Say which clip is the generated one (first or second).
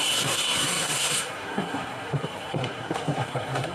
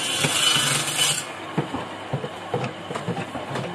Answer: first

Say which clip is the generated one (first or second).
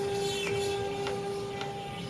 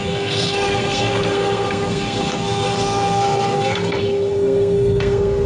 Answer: second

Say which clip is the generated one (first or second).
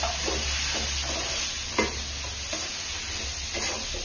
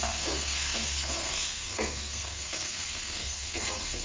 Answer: second